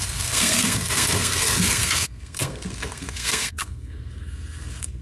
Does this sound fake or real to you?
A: fake